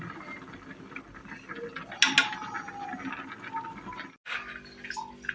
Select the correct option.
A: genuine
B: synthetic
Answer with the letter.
A